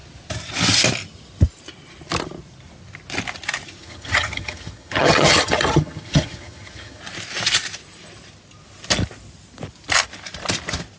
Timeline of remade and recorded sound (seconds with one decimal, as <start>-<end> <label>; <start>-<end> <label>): 0.0-3.8 recorded; 3.8-7.0 remade; 7.0-11.0 recorded